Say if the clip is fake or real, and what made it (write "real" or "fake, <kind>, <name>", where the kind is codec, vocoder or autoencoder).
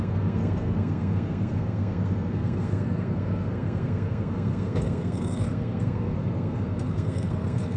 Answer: fake, codec, SNAC